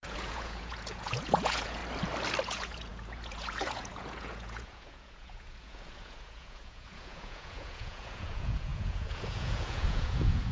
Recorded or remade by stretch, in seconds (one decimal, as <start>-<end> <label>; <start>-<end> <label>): 0.0-1.8 remade; 1.8-2.4 recorded; 2.4-10.5 remade